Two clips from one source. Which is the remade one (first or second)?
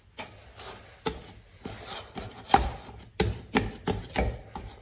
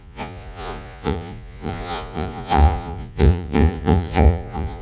second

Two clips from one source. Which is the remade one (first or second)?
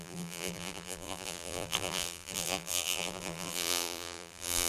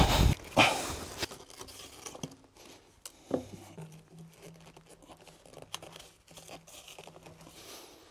first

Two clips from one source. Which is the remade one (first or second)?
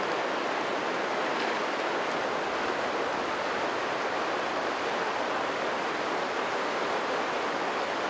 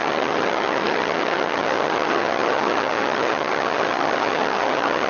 second